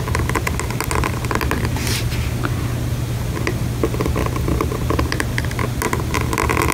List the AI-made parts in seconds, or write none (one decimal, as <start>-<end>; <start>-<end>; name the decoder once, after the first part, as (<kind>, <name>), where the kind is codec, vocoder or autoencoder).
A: none